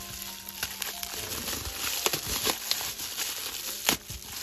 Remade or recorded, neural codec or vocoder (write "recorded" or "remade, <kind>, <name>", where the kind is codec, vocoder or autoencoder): recorded